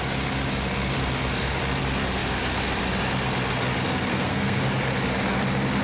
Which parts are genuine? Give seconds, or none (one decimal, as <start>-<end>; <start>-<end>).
0.0-4.1; 4.6-5.8